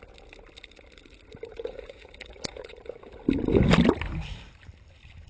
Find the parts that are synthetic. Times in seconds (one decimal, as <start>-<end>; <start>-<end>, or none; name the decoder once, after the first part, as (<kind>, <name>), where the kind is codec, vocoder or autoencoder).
1.5-3.0 (vocoder, Vocos)